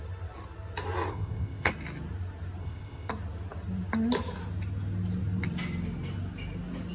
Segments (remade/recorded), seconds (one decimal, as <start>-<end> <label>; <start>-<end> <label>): 0.0-1.1 recorded; 1.1-1.7 remade; 1.7-2.6 recorded; 2.6-3.1 remade; 3.1-6.9 recorded